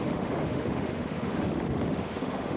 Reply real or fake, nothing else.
fake